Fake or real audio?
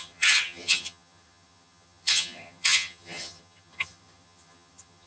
fake